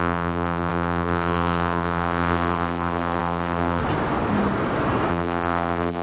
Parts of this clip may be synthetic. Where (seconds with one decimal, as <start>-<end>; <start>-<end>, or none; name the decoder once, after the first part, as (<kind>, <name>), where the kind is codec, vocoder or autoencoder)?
0.0-3.8 (vocoder, BigVGAN v2); 5.1-6.0